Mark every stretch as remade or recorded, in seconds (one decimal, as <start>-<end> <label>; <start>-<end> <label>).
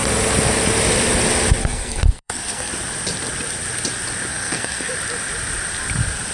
0.0-1.6 recorded; 1.6-2.7 remade; 2.7-4.3 recorded; 4.3-4.9 remade; 4.9-6.3 recorded